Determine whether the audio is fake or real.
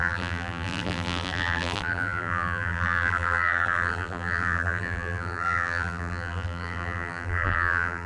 fake